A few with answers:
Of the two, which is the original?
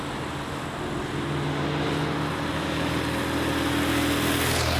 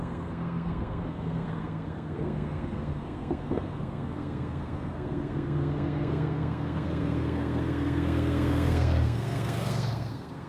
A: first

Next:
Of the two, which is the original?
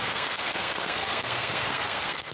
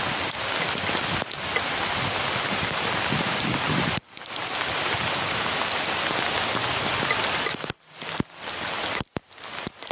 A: second